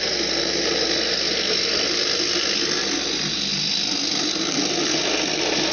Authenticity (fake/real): real